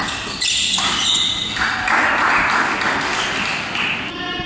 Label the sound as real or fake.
real